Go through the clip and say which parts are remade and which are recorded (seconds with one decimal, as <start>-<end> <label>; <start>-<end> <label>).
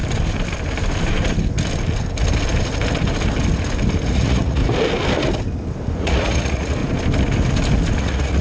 0.0-4.1 recorded; 4.1-4.6 remade; 4.6-6.0 recorded; 6.0-6.8 remade; 6.8-8.0 recorded; 8.0-8.4 remade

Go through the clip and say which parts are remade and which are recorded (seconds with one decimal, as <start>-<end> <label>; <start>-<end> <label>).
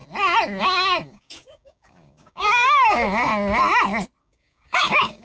0.0-0.6 recorded; 0.6-3.3 remade; 3.3-4.2 recorded; 4.2-5.2 remade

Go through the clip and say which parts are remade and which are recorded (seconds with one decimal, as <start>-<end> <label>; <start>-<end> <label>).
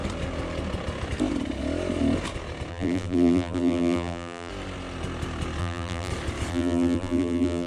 0.0-2.7 recorded; 2.7-4.5 remade; 4.5-5.6 recorded; 5.6-6.1 remade; 6.1-6.5 recorded; 6.5-7.7 remade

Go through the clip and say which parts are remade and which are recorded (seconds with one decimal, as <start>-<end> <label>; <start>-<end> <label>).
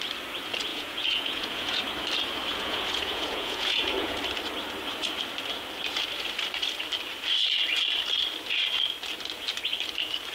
0.0-0.7 recorded; 0.7-1.8 remade; 1.8-2.5 recorded; 2.5-4.2 remade; 4.2-10.3 recorded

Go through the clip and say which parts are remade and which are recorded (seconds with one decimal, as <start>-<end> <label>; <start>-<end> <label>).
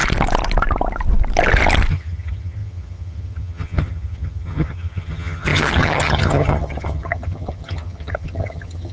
0.0-1.9 recorded; 1.9-8.9 remade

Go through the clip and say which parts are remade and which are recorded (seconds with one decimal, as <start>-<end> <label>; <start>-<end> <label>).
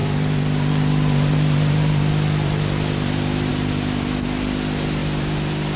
0.0-5.8 recorded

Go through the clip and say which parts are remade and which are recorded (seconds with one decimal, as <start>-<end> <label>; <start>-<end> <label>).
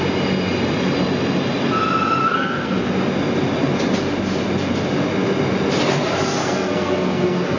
0.0-2.2 recorded; 2.2-2.9 remade; 2.9-6.4 recorded; 6.4-7.6 remade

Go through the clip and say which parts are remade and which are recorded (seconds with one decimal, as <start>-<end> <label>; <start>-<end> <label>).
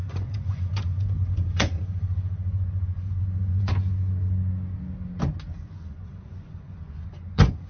0.0-3.7 remade; 3.7-5.7 recorded; 5.7-7.7 remade